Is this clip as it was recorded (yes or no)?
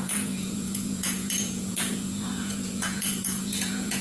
no